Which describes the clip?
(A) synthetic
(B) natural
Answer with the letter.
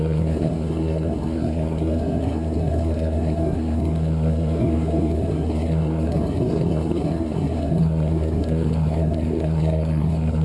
A